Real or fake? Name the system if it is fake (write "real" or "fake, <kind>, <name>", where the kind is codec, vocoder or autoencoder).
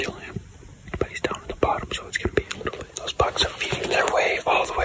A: fake, vocoder, BigVGAN v2